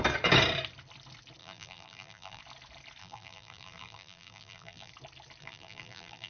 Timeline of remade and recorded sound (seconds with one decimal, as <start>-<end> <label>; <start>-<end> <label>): 0.0-1.4 recorded; 1.4-2.4 remade; 2.4-3.0 recorded; 3.0-4.9 remade; 4.9-5.4 recorded; 5.4-6.3 remade